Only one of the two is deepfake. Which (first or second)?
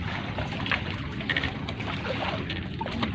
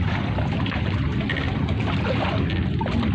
first